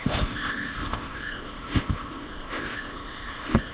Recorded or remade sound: remade